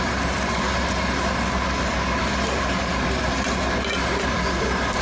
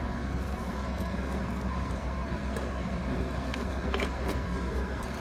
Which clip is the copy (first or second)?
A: second